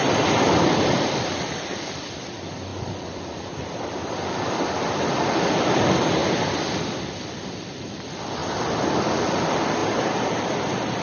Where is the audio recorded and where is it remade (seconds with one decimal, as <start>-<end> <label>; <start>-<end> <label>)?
0.0-6.2 remade; 6.2-7.0 recorded; 7.0-8.4 remade; 8.4-9.0 recorded; 9.0-11.0 remade